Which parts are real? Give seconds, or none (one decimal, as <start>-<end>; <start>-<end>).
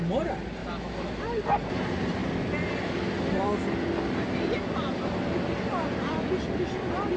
0.0-0.6; 1.2-7.2